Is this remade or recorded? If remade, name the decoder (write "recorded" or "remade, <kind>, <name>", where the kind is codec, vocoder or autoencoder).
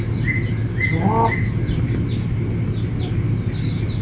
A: recorded